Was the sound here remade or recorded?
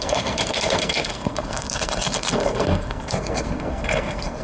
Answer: remade